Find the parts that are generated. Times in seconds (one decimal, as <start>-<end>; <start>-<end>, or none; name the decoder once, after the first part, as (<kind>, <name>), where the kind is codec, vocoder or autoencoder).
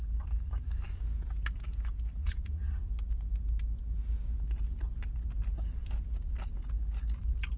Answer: 2.2-2.8 (vocoder, Vocos)